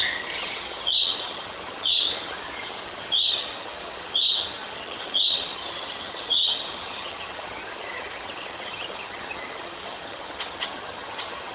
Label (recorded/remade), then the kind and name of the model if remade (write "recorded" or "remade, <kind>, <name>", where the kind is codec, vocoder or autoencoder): remade, vocoder, HiFi-GAN